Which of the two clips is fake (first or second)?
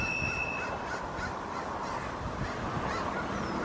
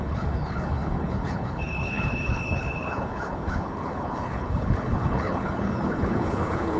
second